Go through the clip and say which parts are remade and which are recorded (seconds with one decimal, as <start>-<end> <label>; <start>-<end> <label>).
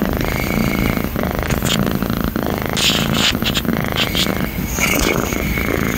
0.0-6.0 recorded